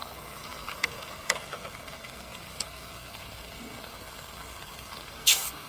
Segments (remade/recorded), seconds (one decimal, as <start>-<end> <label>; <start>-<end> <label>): 0.0-5.7 remade